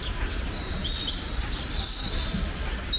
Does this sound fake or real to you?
real